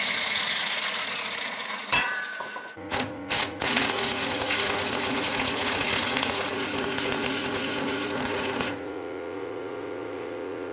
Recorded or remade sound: remade